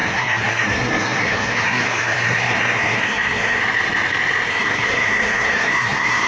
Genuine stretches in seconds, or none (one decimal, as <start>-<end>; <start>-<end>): 3.6-4.5